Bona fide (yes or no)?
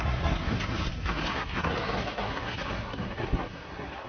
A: no